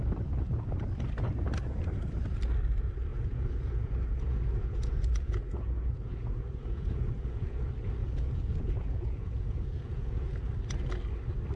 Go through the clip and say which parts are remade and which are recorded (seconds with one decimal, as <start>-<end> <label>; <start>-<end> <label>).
0.0-3.1 recorded; 3.1-7.6 remade; 7.6-8.0 recorded; 8.0-10.3 remade; 10.3-11.6 recorded